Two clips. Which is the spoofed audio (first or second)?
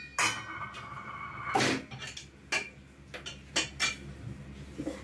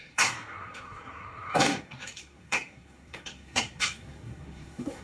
second